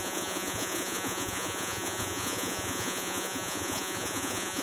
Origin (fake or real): fake